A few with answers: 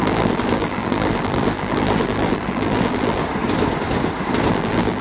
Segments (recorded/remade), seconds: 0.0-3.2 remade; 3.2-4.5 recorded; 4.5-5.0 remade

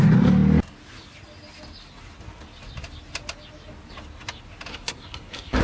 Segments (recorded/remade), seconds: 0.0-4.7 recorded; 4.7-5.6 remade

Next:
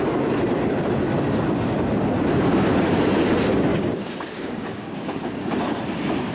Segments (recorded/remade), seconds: 0.0-3.7 recorded; 3.7-5.5 remade; 5.5-6.3 recorded

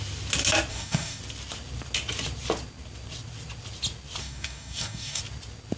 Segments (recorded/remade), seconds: 0.0-0.7 recorded; 0.7-1.2 remade; 1.2-4.2 recorded; 4.2-5.2 remade; 5.2-5.8 recorded